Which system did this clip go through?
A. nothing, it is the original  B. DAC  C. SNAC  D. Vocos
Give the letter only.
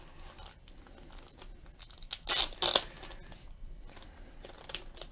A